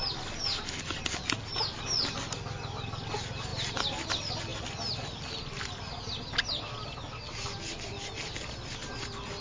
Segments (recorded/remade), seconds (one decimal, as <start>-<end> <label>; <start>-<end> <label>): 0.0-9.4 recorded